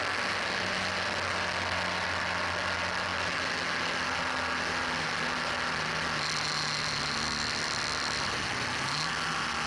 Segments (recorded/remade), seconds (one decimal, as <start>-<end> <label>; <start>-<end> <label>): 0.0-9.7 recorded